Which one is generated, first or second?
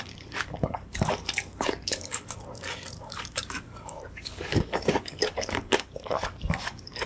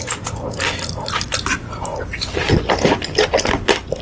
first